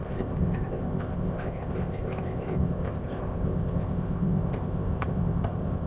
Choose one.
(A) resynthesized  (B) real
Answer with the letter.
A